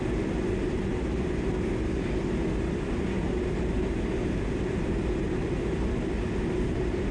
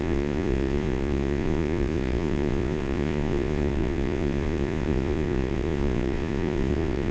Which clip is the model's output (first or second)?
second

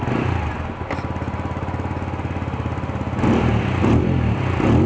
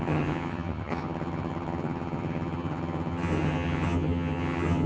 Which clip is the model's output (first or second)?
second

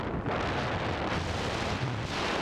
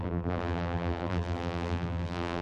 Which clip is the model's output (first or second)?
second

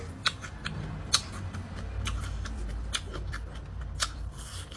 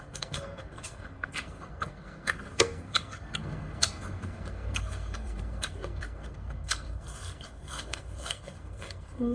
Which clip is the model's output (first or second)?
second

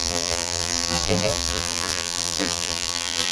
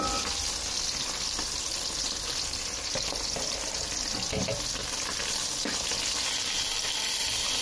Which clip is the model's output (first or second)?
first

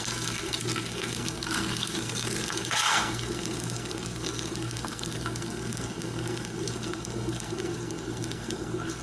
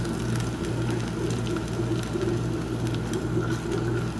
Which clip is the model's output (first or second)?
first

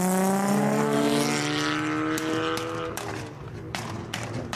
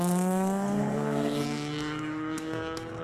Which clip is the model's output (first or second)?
second